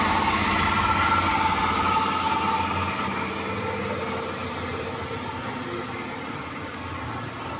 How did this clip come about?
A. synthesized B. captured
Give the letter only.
B